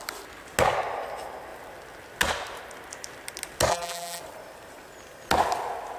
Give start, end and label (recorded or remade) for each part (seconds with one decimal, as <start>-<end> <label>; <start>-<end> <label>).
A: 0.0-3.7 recorded; 3.7-4.2 remade; 4.2-6.0 recorded